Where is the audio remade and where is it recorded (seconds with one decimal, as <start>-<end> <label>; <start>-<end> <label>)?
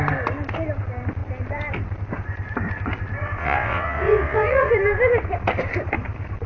0.0-3.4 recorded; 3.4-4.7 remade; 4.7-6.5 recorded